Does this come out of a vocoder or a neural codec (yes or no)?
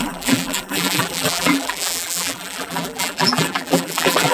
yes